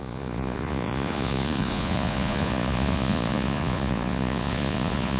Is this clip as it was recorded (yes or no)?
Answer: no